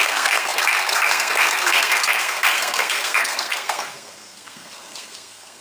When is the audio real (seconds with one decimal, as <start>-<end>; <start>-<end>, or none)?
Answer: none